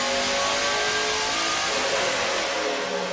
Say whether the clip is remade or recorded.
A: recorded